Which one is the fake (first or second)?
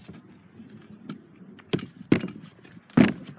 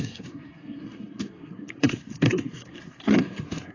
second